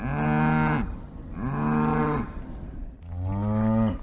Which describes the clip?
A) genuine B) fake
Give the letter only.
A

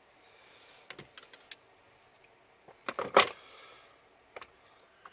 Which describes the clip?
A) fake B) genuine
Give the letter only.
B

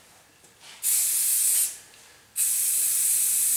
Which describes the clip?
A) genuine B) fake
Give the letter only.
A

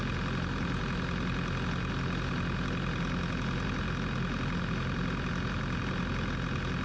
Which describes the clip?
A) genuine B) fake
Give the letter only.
A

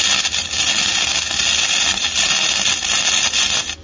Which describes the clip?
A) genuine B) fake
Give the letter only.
A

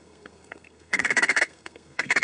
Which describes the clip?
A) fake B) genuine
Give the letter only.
A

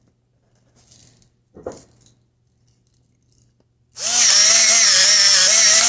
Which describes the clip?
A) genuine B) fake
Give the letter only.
A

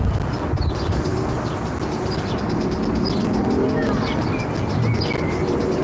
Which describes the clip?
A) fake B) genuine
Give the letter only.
B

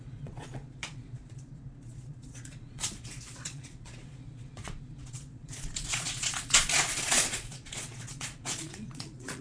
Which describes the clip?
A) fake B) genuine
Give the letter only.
A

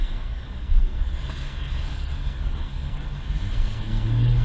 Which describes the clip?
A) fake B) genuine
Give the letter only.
A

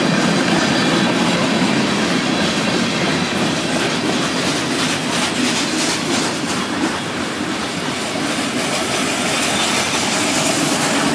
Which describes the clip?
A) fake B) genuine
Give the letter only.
B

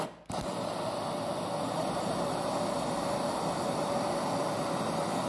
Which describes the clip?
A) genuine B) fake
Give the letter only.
A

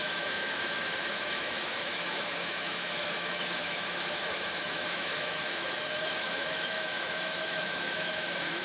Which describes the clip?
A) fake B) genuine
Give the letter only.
A